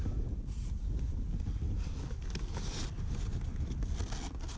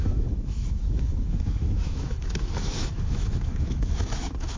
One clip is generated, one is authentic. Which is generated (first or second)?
second